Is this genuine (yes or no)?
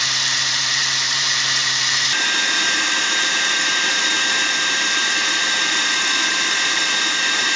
no